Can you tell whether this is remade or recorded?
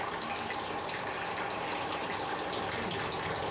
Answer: recorded